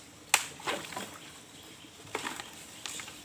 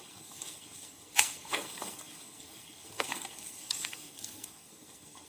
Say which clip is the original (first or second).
first